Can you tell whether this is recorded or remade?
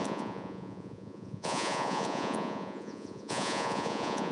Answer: remade